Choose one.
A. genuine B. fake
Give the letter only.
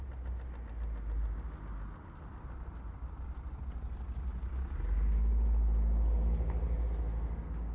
A